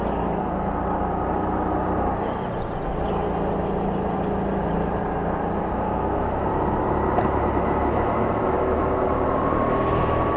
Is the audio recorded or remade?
recorded